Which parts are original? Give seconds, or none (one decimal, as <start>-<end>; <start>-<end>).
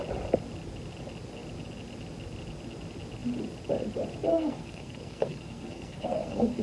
0.0-4.3